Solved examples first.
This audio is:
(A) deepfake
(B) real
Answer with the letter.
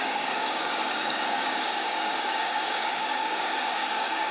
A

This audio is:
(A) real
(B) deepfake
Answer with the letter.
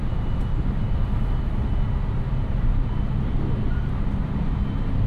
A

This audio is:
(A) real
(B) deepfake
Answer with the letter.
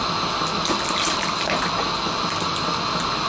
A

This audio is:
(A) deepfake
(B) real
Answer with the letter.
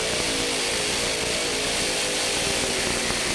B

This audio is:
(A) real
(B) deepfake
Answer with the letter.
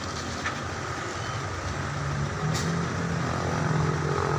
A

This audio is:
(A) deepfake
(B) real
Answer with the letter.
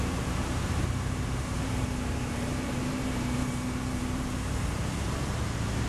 A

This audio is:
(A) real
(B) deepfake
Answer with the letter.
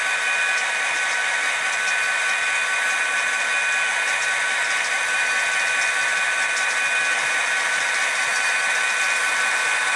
A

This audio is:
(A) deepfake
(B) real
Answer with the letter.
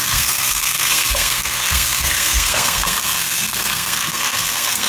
A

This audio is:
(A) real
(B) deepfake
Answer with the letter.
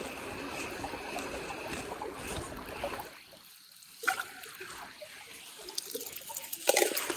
A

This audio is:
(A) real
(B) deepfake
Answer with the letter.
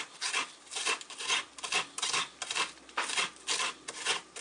A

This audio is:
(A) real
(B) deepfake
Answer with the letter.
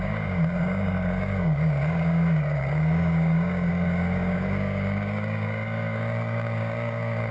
B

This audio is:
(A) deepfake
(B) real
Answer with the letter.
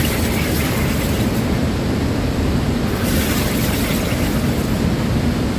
B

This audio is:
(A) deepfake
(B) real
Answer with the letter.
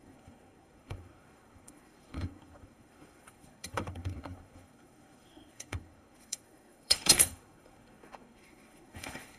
A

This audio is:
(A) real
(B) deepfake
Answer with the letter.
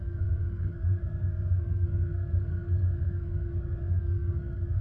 B